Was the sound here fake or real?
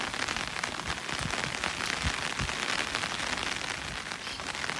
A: real